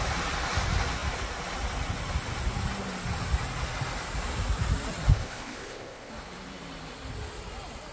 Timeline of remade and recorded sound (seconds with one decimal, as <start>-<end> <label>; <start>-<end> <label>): 0.0-5.1 recorded; 5.1-6.1 remade; 6.1-7.9 recorded